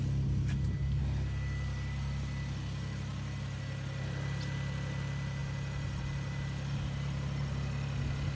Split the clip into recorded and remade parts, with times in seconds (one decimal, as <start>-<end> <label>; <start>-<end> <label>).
0.0-8.4 recorded